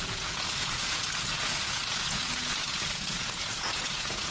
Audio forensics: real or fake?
fake